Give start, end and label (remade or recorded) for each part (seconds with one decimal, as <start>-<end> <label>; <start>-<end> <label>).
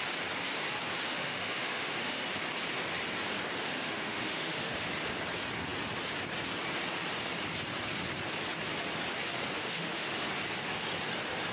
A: 0.0-1.1 recorded; 1.1-2.2 remade; 2.2-3.6 recorded; 3.6-4.9 remade; 4.9-9.6 recorded; 9.6-10.1 remade; 10.1-11.5 recorded